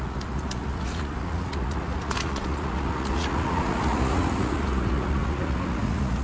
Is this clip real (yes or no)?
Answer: no